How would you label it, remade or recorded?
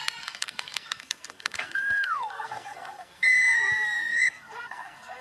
remade